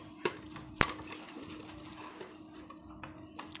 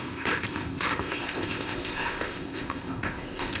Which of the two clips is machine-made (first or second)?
second